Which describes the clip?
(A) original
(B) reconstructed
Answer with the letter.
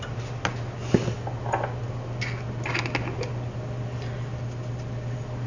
A